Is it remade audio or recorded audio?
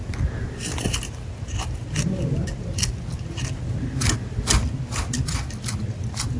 recorded